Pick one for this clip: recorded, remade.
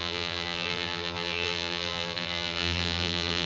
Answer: remade